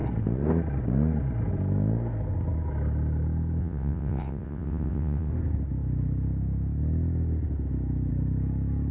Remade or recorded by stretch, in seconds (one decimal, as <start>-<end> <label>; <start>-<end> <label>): 0.0-3.6 recorded; 3.6-5.3 remade; 5.3-8.9 recorded